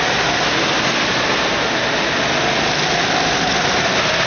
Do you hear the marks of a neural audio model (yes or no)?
no